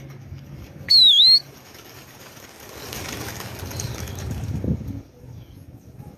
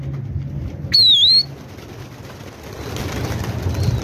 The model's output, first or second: first